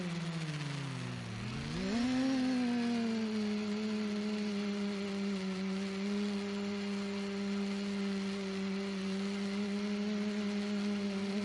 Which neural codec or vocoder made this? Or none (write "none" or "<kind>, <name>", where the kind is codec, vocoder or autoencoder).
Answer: none